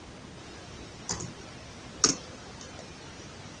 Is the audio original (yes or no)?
yes